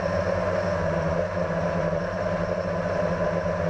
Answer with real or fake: real